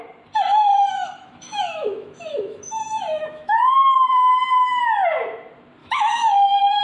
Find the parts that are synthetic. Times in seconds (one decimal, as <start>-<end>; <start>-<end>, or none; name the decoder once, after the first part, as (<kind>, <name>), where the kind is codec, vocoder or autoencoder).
0.7-4.8 (autoencoder, DAC-VAE); 5.8-6.8